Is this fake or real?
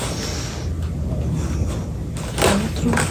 real